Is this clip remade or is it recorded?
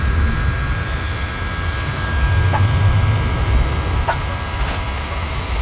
recorded